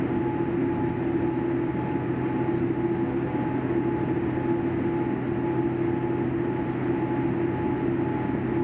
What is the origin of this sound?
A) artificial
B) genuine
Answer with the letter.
B